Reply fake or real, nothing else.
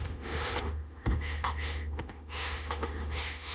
fake